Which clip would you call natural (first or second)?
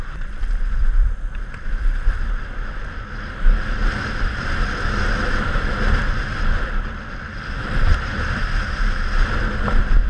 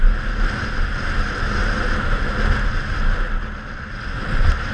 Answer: second